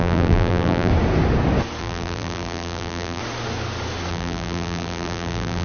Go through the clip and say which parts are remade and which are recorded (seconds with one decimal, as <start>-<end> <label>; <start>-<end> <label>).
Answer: 0.0-0.9 remade; 0.9-1.8 recorded; 1.8-3.2 remade; 3.2-4.1 recorded; 4.1-5.6 remade